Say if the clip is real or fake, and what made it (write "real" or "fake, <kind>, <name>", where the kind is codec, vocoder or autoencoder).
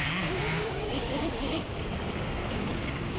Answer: fake, codec, DAC